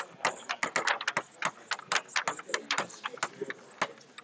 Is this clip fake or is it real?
real